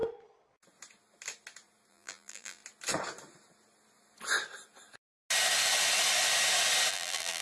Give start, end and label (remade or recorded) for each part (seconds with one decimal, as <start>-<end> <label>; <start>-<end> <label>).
0.0-1.9 recorded; 1.9-2.6 remade; 2.6-6.9 recorded; 6.9-7.4 remade